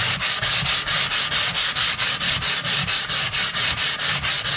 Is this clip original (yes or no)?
yes